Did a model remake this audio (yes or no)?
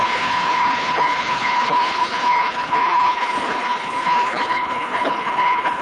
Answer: yes